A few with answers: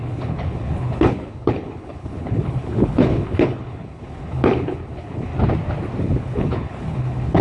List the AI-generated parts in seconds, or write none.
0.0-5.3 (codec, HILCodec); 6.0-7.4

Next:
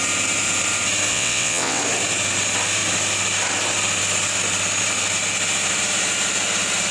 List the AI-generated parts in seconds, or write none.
1.1-1.8 (vocoder, WaveNeXt)

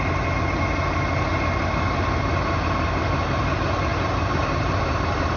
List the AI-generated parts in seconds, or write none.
3.9-5.4 (vocoder, BigVGAN v2)

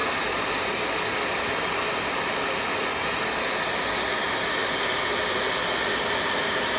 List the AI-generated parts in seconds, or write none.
none